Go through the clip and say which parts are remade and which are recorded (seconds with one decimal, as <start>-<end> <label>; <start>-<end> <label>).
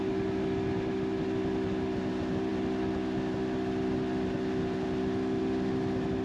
0.0-6.2 recorded